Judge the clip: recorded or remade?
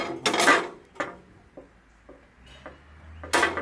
recorded